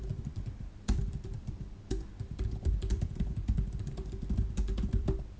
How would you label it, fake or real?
fake